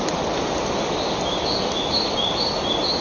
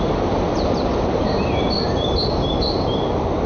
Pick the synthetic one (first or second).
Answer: second